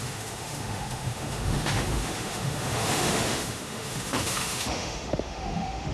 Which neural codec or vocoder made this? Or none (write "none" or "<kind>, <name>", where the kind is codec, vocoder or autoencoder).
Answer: autoencoder, DAC-VAE